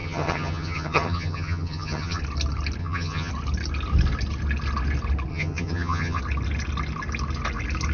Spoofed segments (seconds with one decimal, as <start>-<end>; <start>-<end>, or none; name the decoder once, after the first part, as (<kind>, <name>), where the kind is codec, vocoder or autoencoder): 0.0-2.2 (vocoder, HiFi-GAN); 2.8-3.3; 5.3-6.2